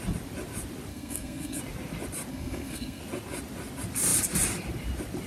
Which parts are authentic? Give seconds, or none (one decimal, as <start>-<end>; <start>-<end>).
0.0-0.9; 1.6-2.3; 3.0-5.3

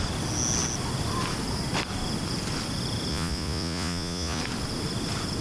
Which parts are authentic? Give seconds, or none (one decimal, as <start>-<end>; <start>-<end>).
0.0-3.1; 4.4-5.4

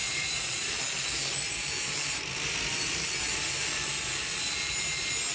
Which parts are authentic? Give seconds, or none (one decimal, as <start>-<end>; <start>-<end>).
0.7-5.3

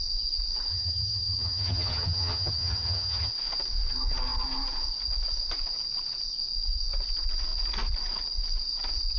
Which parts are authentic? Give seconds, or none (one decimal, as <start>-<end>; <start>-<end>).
0.0-0.7; 3.3-9.2